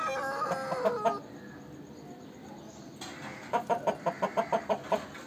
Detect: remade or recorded recorded